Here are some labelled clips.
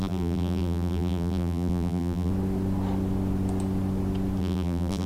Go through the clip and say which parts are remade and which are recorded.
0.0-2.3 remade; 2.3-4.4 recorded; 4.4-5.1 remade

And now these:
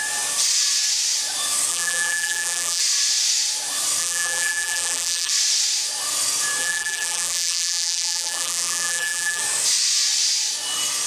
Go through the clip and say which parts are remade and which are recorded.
0.0-1.7 recorded; 1.7-2.8 remade; 2.8-4.0 recorded; 4.0-5.3 remade; 5.3-6.6 recorded; 6.6-9.4 remade; 9.4-11.1 recorded

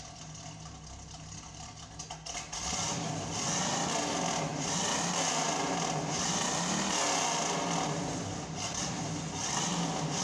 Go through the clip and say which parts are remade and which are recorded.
0.0-10.2 recorded